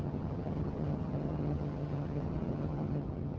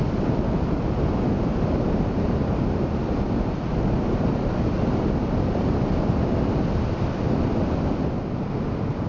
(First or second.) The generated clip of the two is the first